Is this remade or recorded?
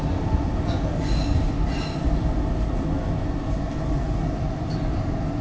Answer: recorded